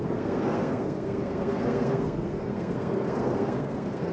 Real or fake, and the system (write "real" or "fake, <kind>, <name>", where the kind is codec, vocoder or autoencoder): fake, codec, SNAC